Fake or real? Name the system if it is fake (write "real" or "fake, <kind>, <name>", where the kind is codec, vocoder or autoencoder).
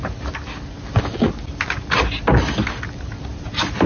real